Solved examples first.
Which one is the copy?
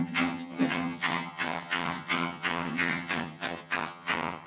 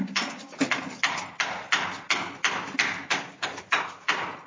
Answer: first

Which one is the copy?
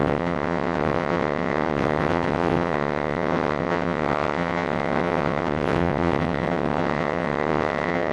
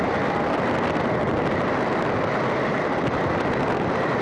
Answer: first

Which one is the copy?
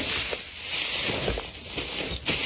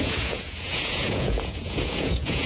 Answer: second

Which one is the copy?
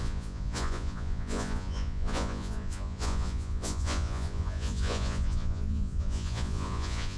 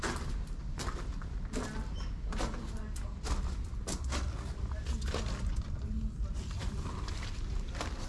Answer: first